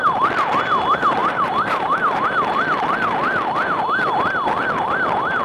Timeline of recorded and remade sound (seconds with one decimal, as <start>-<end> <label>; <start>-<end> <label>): 0.0-1.2 recorded; 1.2-2.0 remade; 2.0-5.4 recorded